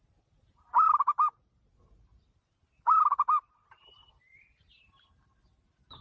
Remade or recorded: remade